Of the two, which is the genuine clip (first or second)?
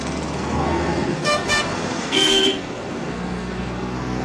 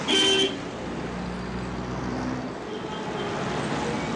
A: second